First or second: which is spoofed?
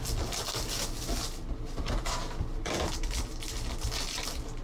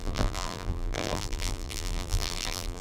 second